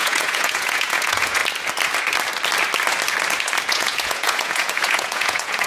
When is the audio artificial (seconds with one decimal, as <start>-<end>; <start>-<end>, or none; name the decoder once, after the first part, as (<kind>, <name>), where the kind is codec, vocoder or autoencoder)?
0.0-1.4 (vocoder, Vocos); 3.7-5.7